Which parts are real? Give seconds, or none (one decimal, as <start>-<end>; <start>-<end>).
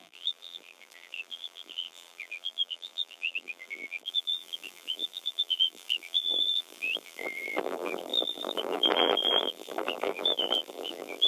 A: none